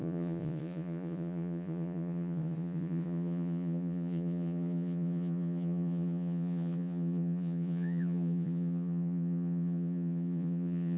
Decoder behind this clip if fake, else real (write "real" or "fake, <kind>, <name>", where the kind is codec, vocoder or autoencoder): fake, vocoder, Vocos